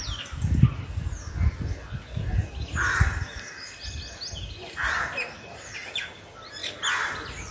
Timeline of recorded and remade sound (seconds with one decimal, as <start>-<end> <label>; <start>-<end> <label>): 0.0-7.5 recorded